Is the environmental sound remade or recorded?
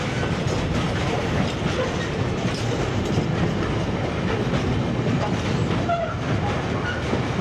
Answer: recorded